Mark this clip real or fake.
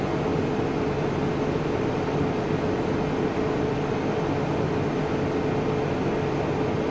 real